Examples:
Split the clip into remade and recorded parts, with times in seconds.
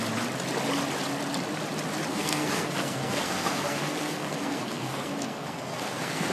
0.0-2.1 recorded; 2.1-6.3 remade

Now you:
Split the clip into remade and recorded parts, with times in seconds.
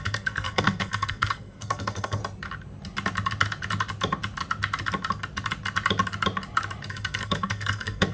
0.0-2.2 remade; 2.2-6.9 recorded; 6.9-8.1 remade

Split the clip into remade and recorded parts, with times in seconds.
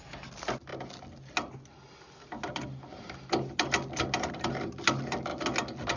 0.0-6.0 recorded